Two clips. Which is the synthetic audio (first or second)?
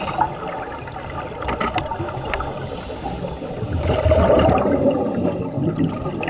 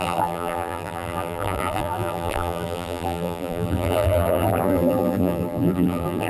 second